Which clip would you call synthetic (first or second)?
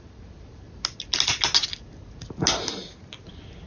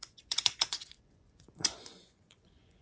second